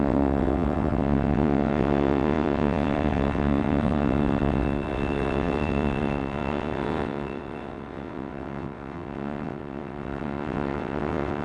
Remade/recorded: remade